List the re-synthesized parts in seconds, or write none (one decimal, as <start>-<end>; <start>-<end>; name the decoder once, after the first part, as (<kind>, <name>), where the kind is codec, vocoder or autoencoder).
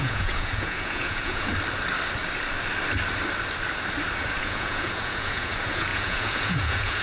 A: 0.0-1.5 (vocoder, Vocos); 4.4-7.0